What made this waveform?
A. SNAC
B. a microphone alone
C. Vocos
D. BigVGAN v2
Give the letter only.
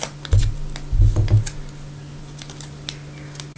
B